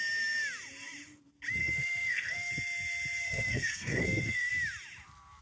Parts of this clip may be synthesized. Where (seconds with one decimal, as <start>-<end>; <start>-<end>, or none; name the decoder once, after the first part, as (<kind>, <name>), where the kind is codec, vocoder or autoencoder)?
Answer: 1.6-2.5 (codec, SNAC); 3.2-4.5